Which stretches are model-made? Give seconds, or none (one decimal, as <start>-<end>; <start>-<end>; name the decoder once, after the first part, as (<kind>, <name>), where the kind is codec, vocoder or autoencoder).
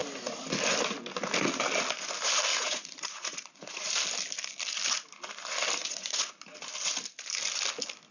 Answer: 2.5-3.9 (vocoder, Vocos); 5.8-6.3